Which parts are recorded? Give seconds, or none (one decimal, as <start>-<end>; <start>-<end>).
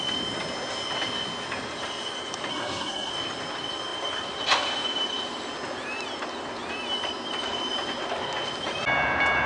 0.0-2.5; 3.1-9.5